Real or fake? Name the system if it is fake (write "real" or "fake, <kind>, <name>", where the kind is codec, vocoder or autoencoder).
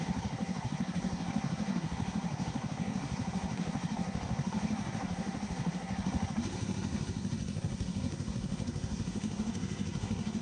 fake, codec, SNAC